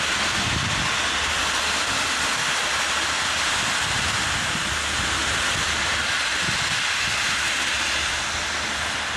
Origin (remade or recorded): recorded